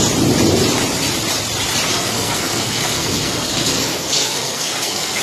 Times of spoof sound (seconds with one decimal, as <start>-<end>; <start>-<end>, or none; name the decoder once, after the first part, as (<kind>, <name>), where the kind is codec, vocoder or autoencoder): 1.9-5.2 (codec, SNAC)